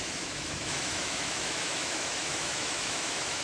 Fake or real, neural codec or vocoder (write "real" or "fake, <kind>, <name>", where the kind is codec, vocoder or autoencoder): fake, autoencoder, DAC-VAE